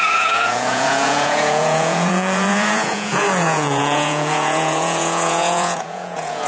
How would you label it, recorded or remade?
remade